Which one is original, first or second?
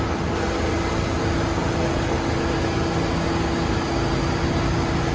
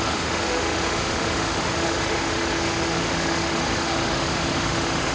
first